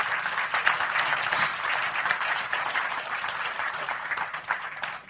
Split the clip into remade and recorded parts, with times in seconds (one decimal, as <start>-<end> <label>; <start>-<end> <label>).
0.0-1.5 recorded; 1.5-4.4 remade; 4.4-5.1 recorded